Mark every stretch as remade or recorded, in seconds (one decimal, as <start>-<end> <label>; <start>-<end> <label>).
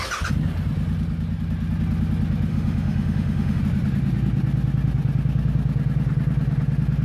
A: 0.0-2.5 recorded; 2.5-3.6 remade; 3.6-7.0 recorded